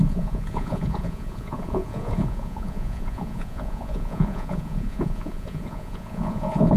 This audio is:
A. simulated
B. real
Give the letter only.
A